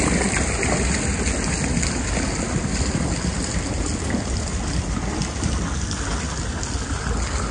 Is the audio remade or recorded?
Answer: recorded